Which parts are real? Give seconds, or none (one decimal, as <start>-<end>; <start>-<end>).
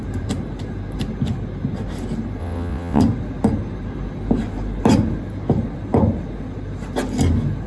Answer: 0.0-2.4; 3.0-7.7